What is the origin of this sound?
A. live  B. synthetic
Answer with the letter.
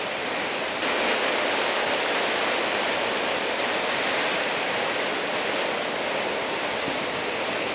B